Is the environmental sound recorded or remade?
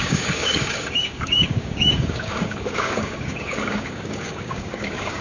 remade